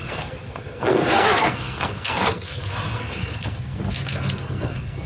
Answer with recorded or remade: remade